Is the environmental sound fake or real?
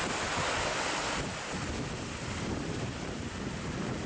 real